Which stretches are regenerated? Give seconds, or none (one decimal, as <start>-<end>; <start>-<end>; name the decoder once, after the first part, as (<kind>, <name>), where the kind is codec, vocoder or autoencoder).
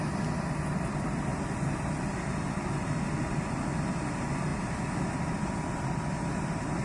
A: 0.0-6.8 (vocoder, BigVGAN v2)